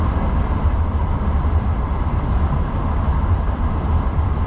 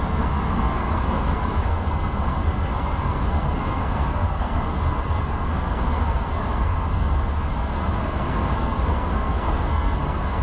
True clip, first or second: first